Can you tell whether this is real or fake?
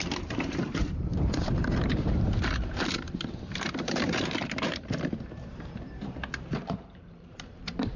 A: fake